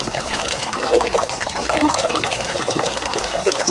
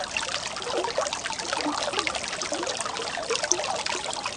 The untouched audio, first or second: second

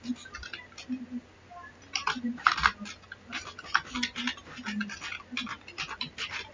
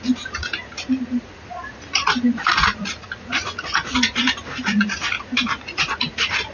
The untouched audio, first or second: first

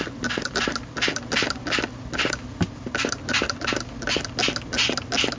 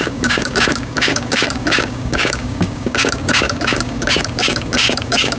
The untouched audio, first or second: first